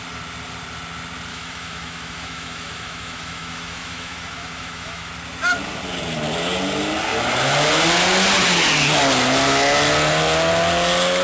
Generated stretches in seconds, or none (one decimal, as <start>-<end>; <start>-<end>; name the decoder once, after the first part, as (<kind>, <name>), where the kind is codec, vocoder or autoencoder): 1.3-5.1 (autoencoder, DAC-VAE)